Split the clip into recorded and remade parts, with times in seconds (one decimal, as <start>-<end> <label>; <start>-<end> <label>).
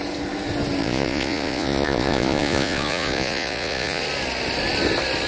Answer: 0.0-0.8 recorded; 0.8-4.0 remade; 4.0-5.3 recorded